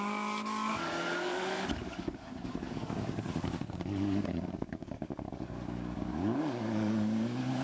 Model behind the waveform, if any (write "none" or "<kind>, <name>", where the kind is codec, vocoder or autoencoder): codec, DAC